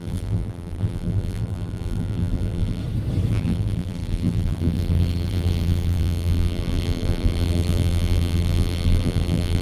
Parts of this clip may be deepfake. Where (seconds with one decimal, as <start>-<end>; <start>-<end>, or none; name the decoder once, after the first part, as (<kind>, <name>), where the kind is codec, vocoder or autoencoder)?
0.0-2.8 (vocoder, BigVGAN v2); 3.3-9.6

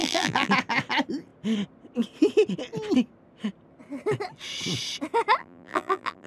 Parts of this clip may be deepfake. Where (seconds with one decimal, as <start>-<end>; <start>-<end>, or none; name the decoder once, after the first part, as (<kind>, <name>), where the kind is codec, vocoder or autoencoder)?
0.0-0.5 (vocoder, BigVGAN v2); 5.4-6.3

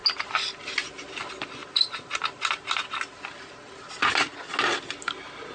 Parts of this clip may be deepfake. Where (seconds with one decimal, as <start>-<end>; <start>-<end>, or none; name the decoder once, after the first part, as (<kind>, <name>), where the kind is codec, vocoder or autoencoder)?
none

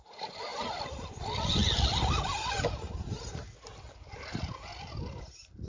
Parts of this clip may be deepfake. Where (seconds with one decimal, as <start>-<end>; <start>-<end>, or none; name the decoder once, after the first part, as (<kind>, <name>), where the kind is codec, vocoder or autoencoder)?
none